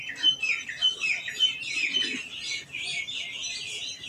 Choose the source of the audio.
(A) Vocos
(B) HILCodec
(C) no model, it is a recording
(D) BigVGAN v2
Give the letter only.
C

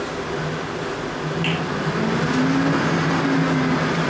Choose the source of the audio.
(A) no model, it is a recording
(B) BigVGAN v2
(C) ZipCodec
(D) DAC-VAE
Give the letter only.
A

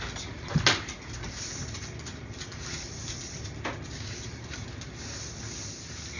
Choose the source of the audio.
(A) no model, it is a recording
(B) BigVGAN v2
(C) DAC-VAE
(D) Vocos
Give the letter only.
A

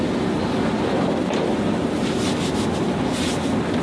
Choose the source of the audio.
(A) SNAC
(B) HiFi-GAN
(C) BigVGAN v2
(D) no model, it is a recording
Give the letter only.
D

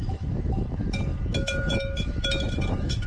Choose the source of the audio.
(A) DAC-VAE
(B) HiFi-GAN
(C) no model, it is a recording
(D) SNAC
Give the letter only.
A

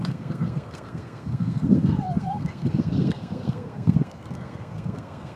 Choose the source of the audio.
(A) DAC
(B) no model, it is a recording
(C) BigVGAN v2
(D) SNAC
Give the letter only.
D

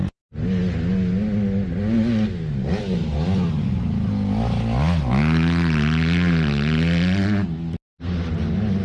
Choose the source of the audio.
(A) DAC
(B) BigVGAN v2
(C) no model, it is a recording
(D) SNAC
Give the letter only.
C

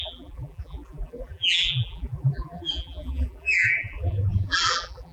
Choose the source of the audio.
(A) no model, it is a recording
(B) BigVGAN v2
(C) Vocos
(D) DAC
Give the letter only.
B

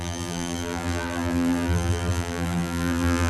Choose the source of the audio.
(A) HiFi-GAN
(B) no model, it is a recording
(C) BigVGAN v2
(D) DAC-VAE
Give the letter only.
C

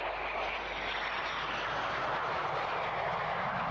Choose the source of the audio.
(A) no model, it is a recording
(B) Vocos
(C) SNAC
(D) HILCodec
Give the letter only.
A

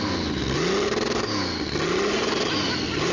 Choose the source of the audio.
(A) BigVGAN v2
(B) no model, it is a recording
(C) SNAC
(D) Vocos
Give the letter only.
B